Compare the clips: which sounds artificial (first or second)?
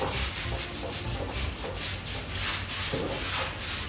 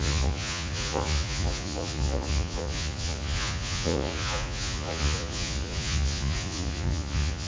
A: second